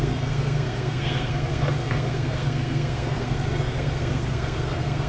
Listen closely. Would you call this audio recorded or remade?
remade